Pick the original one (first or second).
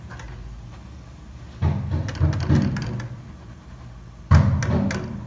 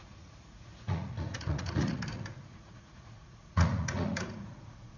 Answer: first